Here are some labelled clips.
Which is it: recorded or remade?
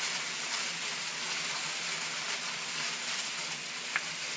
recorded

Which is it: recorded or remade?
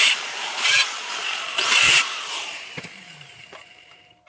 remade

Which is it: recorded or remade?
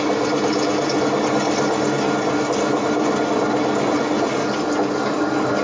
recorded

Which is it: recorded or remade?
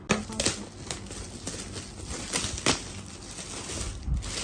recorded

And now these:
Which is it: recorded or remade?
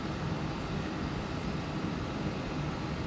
recorded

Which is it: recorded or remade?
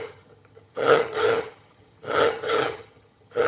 remade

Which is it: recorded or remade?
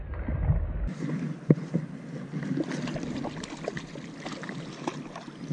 recorded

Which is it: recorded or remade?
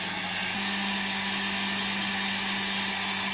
recorded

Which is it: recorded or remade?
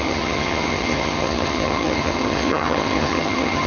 remade